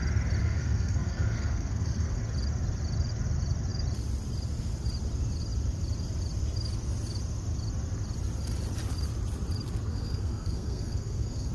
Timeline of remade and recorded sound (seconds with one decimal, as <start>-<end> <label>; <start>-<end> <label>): 0.0-0.4 recorded; 0.4-2.2 remade; 2.2-9.9 recorded; 9.9-11.5 remade